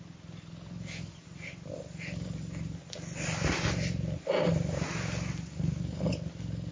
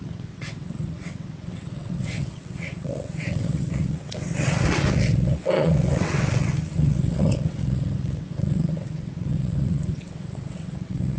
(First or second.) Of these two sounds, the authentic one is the first